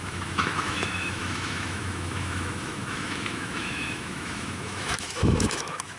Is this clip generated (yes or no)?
yes